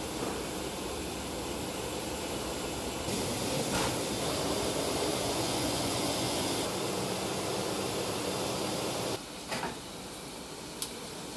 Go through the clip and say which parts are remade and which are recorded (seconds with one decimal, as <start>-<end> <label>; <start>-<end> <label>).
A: 0.0-5.1 recorded; 5.1-6.5 remade; 6.5-11.4 recorded